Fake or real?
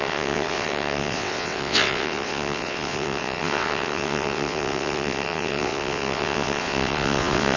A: fake